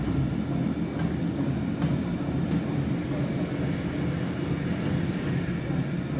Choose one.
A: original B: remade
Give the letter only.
A